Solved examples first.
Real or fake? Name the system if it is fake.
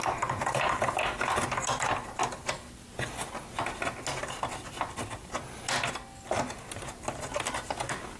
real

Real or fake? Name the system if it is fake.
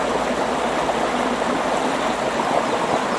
real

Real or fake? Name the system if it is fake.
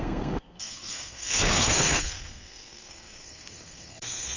fake, codec, SNAC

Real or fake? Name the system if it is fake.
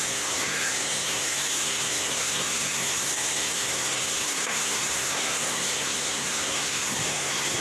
fake, codec, SNAC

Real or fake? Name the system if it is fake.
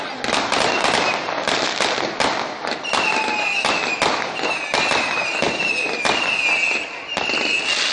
real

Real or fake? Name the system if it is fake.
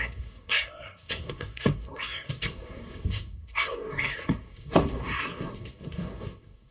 fake, codec, SNAC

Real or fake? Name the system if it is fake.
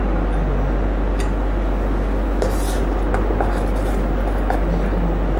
real